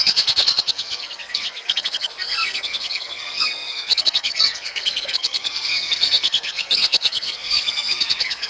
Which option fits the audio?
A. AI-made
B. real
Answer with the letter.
A